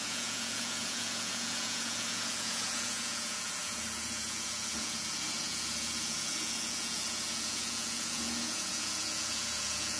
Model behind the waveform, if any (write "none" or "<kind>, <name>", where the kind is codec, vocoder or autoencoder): vocoder, Vocos